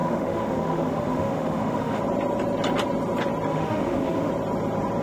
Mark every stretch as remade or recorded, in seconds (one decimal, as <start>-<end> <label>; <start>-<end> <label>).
0.0-2.0 remade; 2.0-3.5 recorded; 3.5-4.3 remade; 4.3-5.0 recorded